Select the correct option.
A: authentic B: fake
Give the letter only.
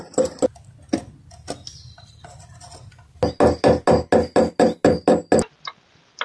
A